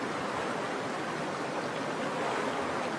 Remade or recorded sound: recorded